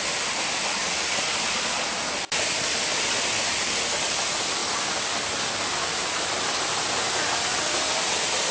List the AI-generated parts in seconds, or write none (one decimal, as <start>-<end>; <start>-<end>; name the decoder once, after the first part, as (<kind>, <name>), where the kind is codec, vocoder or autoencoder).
0.0-8.5 (vocoder, BigVGAN v2)